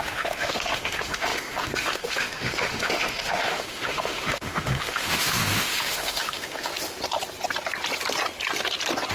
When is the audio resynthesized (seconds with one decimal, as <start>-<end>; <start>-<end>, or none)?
0.0-6.7